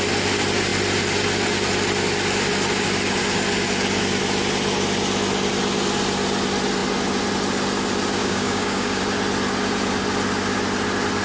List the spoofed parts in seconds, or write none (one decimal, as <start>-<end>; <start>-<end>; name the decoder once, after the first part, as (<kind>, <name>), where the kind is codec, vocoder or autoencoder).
8.2-9.0 (codec, DAC)